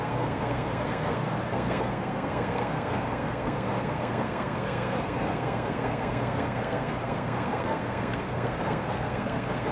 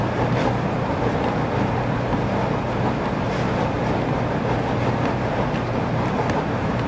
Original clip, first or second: second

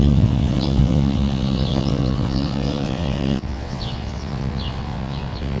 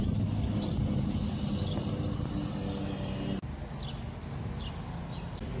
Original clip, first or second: second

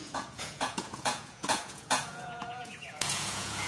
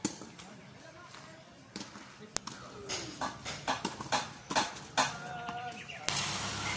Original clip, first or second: second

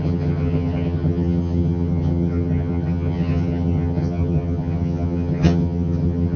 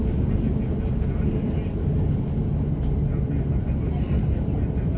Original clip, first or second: second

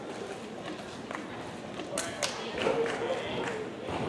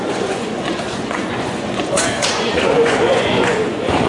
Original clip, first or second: first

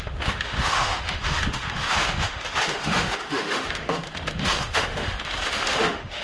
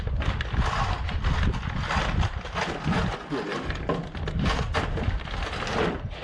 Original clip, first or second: second